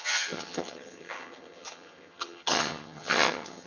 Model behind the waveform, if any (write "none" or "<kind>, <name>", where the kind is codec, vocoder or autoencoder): vocoder, HiFi-GAN